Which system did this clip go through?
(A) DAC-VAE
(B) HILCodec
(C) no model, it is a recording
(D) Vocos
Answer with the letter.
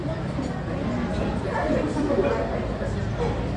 C